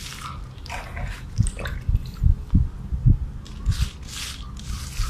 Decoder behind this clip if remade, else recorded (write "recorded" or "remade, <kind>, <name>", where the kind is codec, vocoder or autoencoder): recorded